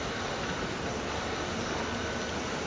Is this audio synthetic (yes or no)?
no